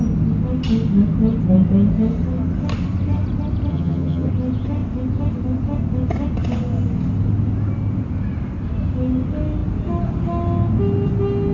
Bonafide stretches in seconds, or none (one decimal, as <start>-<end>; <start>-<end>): 0.0-3.7; 4.3-11.5